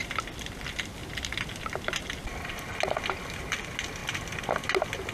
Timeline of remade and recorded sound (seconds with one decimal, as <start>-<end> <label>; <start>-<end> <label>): 0.0-5.1 recorded